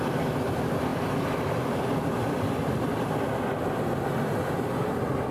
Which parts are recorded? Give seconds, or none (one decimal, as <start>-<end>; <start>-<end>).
0.0-5.3